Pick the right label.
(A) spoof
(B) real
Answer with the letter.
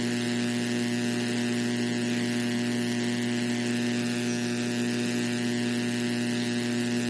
B